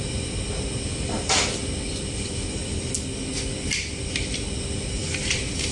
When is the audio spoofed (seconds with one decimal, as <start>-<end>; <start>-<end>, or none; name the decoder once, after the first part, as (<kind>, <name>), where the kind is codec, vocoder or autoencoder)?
none